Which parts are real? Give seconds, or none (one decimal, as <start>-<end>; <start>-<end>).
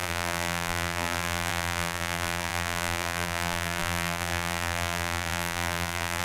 none